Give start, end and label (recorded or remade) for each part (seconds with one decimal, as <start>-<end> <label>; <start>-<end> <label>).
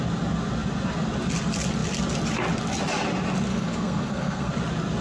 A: 0.0-3.5 recorded; 3.5-4.5 remade; 4.5-5.0 recorded